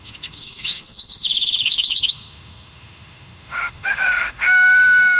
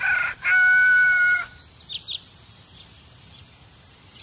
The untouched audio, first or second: second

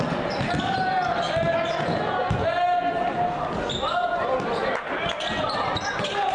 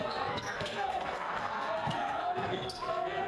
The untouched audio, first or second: first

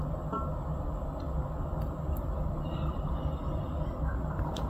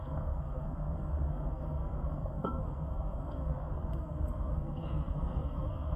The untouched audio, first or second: first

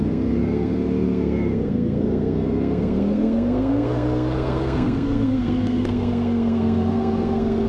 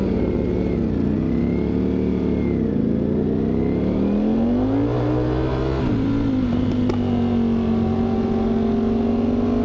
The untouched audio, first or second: second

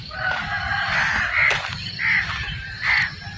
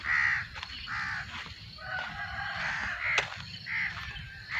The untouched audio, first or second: second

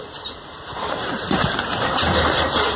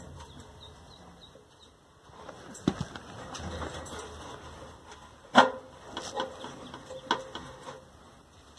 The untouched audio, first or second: second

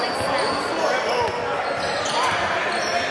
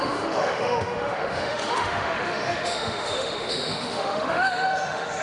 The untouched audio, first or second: first